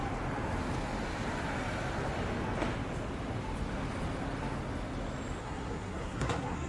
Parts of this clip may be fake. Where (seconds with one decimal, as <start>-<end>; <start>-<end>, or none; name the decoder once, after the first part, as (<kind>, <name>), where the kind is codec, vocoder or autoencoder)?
5.4-6.7 (codec, SNAC)